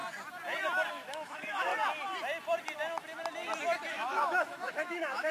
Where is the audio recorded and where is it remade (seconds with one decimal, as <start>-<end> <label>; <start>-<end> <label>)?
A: 0.0-0.9 recorded; 0.9-1.7 remade; 1.7-3.9 recorded; 3.9-5.3 remade